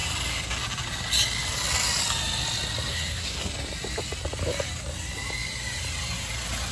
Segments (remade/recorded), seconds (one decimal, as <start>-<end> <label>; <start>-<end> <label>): 0.0-2.9 recorded; 2.9-3.5 remade; 3.5-6.7 recorded